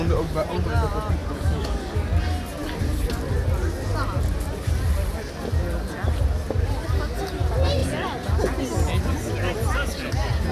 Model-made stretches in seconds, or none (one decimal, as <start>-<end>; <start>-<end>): 1.2-2.2

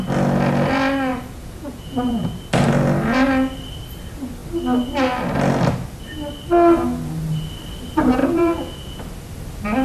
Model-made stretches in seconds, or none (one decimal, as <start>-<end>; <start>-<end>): 1.1-2.5; 8.2-9.0

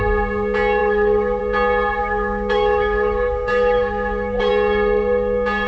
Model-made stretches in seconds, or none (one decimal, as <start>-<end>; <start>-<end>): 0.8-1.4; 2.0-4.5

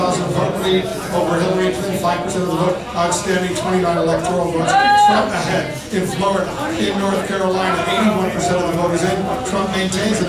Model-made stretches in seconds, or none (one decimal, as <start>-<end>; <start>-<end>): 0.9-2.3; 5.4-9.0

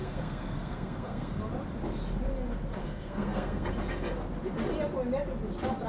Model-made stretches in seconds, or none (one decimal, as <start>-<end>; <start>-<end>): 0.0-1.4; 2.8-3.7

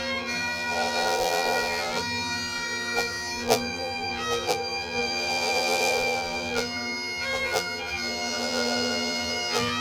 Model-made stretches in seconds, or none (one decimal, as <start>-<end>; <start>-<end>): 0.0-9.8